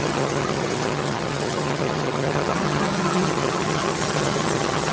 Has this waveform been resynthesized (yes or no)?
yes